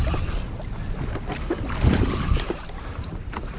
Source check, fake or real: real